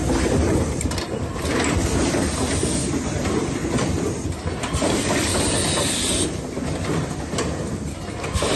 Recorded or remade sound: recorded